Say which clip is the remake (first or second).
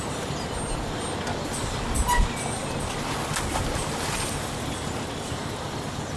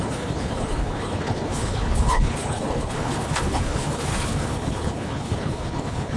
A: second